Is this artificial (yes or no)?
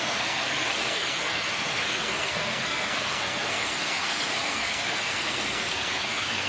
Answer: yes